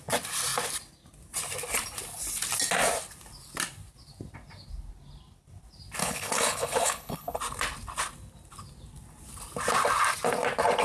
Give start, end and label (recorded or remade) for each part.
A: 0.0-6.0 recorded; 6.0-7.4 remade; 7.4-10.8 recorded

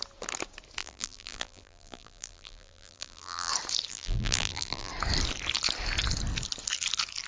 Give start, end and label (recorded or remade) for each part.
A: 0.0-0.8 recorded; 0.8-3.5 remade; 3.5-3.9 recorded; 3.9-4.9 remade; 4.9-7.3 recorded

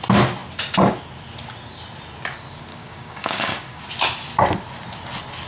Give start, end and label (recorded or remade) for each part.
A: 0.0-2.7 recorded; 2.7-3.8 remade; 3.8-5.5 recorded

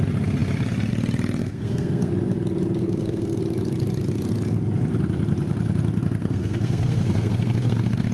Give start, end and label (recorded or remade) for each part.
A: 0.0-1.4 recorded; 1.4-2.1 remade; 2.1-2.8 recorded; 2.8-3.4 remade; 3.4-6.2 recorded; 6.2-8.1 remade

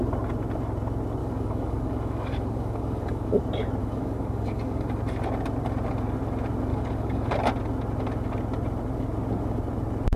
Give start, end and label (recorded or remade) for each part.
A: 0.0-1.2 recorded; 1.2-3.4 remade; 3.4-3.8 recorded; 3.8-5.0 remade; 5.0-6.7 recorded; 6.7-7.3 remade; 7.3-10.2 recorded

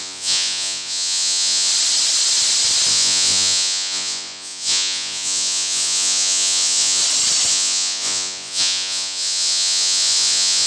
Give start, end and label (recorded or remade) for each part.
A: 0.0-1.7 remade; 1.7-2.9 recorded; 2.9-7.0 remade; 7.0-7.5 recorded; 7.5-10.7 remade

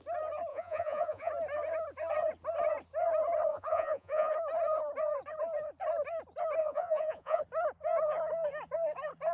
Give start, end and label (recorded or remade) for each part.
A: 0.0-0.5 recorded; 0.5-1.3 remade; 1.3-3.5 recorded; 3.5-4.3 remade; 4.3-6.6 recorded; 6.6-7.4 remade; 7.4-9.3 recorded

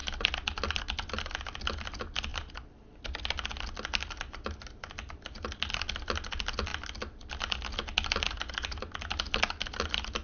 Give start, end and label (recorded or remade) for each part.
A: 0.0-10.2 recorded